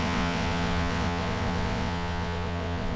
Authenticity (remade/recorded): remade